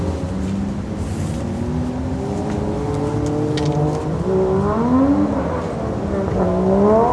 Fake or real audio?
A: real